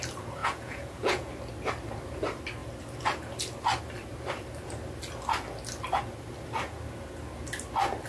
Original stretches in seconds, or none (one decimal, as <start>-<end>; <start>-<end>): 0.0-0.4; 1.3-8.1

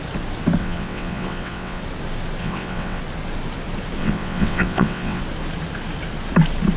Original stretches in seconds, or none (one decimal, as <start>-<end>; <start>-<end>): 0.0-0.6; 1.8-2.4; 3.0-4.0; 5.2-6.8

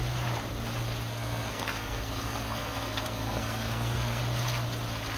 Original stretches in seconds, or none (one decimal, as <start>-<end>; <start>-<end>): 0.0-1.1; 4.2-5.2

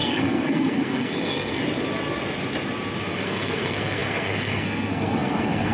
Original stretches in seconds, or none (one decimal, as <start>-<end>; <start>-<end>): 1.6-3.1

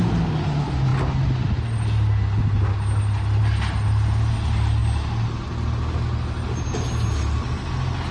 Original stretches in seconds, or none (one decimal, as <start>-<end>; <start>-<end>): 0.0-8.1